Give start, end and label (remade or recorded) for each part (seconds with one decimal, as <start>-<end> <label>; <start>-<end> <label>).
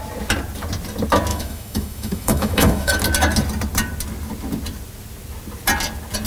0.0-1.3 recorded; 1.3-3.0 remade; 3.0-6.3 recorded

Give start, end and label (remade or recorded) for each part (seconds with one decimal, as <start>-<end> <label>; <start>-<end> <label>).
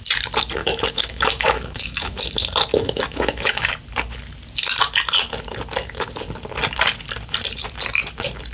0.0-0.6 recorded; 0.6-2.2 remade; 2.2-2.7 recorded; 2.7-3.7 remade; 3.7-8.5 recorded